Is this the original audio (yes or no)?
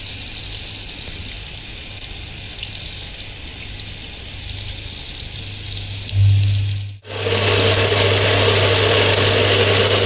yes